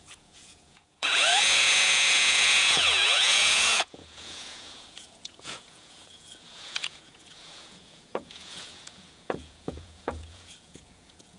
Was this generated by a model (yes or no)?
yes